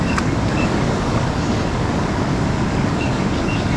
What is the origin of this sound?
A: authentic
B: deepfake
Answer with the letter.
B